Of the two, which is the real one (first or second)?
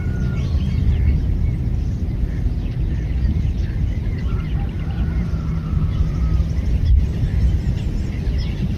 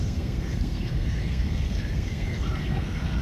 first